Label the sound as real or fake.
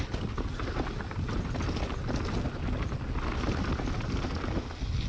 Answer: real